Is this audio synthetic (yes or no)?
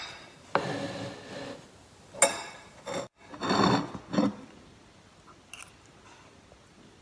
no